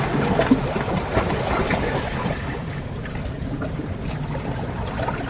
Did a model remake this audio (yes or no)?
no